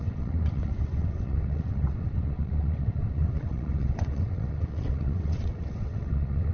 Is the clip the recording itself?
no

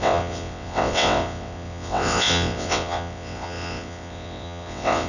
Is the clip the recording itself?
no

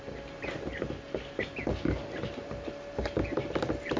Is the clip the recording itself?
yes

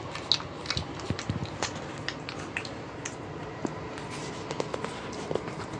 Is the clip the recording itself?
yes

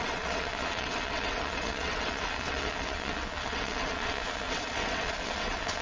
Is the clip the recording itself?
no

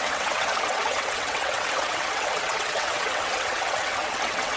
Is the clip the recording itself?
no